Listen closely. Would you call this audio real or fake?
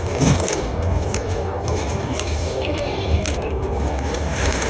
fake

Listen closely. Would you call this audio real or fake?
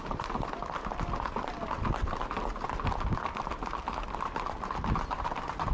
real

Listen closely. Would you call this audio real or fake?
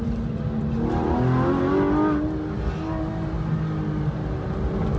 real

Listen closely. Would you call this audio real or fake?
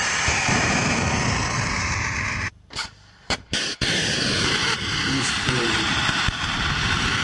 fake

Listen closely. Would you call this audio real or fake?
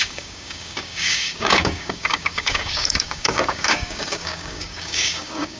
fake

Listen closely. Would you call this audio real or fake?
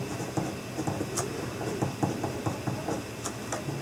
real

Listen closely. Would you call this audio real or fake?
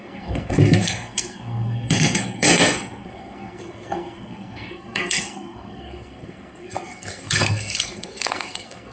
fake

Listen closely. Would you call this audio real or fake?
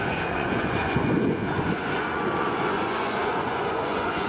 fake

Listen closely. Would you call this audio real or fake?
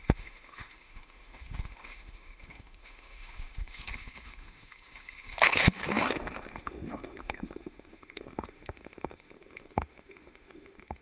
fake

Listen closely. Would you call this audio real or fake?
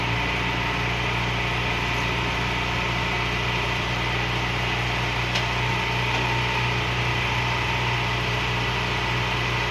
fake